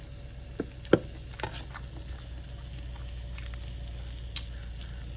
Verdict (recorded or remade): recorded